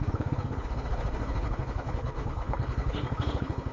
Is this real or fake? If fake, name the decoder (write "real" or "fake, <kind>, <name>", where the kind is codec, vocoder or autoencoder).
fake, codec, HILCodec